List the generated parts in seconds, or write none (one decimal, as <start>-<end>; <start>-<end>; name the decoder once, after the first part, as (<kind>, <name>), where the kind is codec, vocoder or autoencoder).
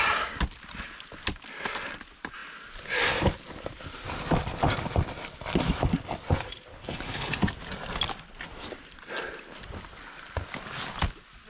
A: 6.7-7.3 (codec, HILCodec)